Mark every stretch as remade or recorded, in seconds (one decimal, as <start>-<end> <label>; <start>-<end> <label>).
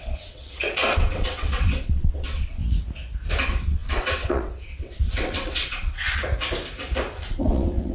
0.0-2.6 remade; 2.6-3.4 recorded; 3.4-6.2 remade; 6.2-7.3 recorded; 7.3-7.9 remade